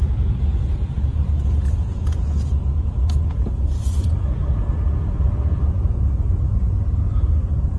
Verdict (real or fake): fake